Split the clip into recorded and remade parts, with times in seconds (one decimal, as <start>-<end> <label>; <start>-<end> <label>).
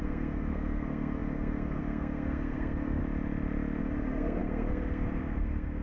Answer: 0.0-3.0 remade; 3.0-3.8 recorded; 3.8-5.8 remade